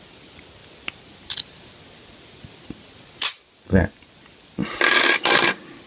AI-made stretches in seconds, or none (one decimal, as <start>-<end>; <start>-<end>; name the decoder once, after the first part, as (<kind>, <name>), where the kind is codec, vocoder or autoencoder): none